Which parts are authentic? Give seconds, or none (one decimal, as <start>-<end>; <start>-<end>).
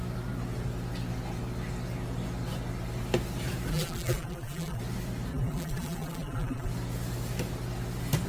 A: 0.0-3.7; 4.8-5.3; 6.7-8.3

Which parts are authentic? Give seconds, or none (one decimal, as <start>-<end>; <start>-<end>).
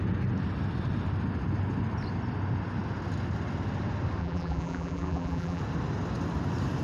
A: 0.0-4.2; 5.6-6.8